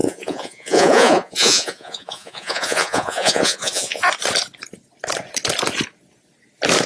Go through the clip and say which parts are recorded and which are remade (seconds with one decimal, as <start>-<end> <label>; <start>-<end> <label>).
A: 0.0-4.0 remade; 4.0-6.9 recorded